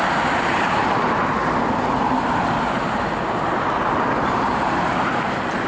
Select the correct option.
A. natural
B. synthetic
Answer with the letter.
B